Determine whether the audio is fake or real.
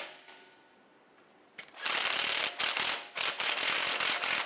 real